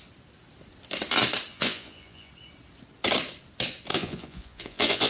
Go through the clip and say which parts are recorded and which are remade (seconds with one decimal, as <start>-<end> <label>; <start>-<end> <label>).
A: 0.0-1.5 recorded; 1.5-2.3 remade; 2.3-3.9 recorded; 3.9-5.1 remade

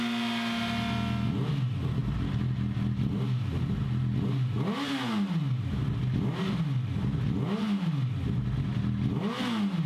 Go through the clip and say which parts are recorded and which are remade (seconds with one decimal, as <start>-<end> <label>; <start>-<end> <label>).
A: 0.0-9.9 recorded

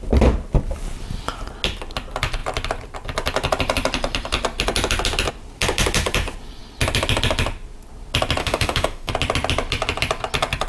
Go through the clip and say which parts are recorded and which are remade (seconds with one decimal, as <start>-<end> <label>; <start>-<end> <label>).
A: 0.0-8.4 recorded; 8.4-9.1 remade; 9.1-10.7 recorded

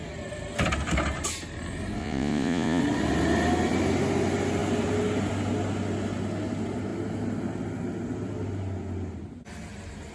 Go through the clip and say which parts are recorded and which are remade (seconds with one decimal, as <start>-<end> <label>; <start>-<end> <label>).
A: 0.0-2.0 recorded; 2.0-2.8 remade; 2.8-10.1 recorded

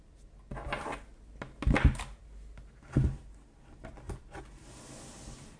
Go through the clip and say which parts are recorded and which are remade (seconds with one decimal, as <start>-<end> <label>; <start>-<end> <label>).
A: 0.0-5.6 recorded

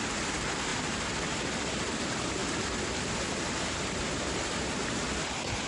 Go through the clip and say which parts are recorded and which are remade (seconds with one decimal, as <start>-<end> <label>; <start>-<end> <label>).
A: 0.0-5.7 recorded

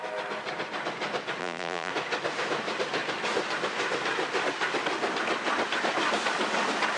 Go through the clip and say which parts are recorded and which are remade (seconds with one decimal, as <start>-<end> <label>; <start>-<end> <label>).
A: 0.0-1.4 recorded; 1.4-1.9 remade; 1.9-7.0 recorded

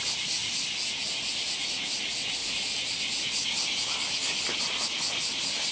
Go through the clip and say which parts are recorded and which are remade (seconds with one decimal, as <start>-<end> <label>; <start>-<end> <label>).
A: 0.0-5.7 recorded